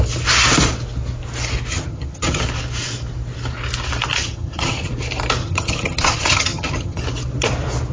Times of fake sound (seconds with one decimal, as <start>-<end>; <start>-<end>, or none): 1.7-2.4; 4.2-4.9; 5.4-7.0